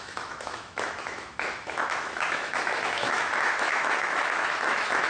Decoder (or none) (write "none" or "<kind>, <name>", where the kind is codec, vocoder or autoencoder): autoencoder, DAC-VAE